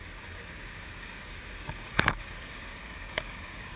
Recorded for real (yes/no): no